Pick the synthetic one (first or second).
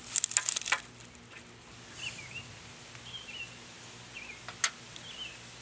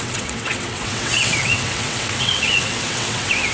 second